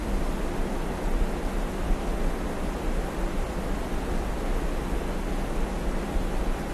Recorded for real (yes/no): no